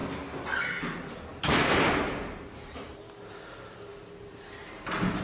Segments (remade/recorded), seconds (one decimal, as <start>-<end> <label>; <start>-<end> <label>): 0.0-5.2 recorded